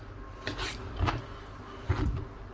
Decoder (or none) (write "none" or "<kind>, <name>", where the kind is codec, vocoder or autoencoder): none